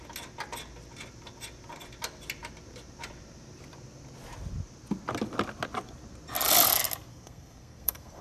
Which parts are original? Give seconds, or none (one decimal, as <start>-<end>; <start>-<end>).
0.0-7.1